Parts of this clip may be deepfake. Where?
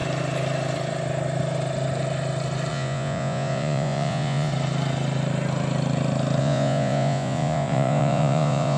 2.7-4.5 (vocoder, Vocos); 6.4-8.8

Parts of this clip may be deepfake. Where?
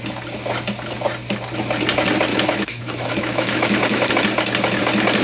2.3-4.1 (autoencoder, DAC-VAE)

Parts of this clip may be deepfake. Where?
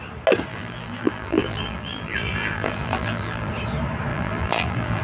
0.5-3.5 (vocoder, BigVGAN v2); 4.1-5.0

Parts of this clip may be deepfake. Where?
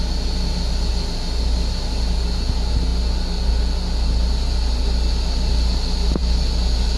none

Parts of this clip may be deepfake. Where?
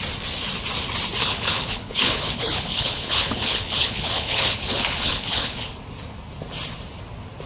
1.2-5.7 (codec, HILCodec)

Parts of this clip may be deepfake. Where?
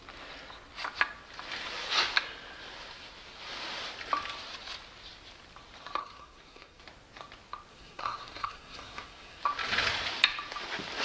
6.0-6.8 (codec, SNAC); 7.7-9.4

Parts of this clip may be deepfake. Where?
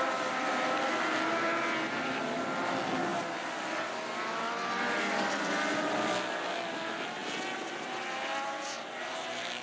none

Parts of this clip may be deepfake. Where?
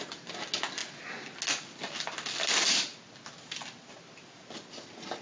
none